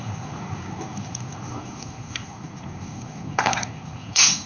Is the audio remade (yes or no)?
yes